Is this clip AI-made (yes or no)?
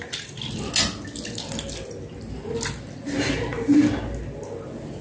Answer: no